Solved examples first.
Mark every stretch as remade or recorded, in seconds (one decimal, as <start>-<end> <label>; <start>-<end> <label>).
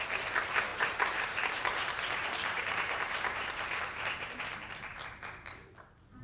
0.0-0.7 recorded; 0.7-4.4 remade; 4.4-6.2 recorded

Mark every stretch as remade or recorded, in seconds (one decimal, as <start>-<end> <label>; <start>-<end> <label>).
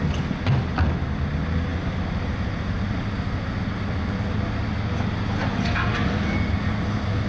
0.0-7.3 recorded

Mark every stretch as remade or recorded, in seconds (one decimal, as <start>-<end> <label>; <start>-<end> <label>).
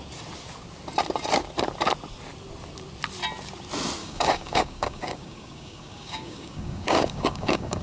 0.0-4.0 recorded; 4.0-7.8 remade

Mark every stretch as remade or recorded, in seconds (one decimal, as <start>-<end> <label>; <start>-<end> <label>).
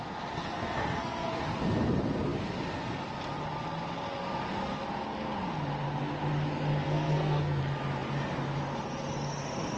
0.0-0.4 recorded; 0.4-1.4 remade; 1.4-6.8 recorded; 6.8-7.6 remade; 7.6-9.8 recorded